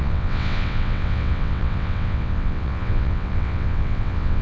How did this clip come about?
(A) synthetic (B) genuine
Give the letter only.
A